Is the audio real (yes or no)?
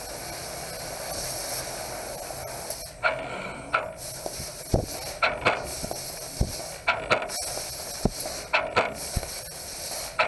yes